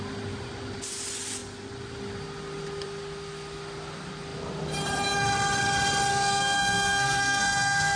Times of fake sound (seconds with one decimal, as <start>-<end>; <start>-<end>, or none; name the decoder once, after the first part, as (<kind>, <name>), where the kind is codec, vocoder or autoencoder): 6.1-8.0 (codec, SNAC)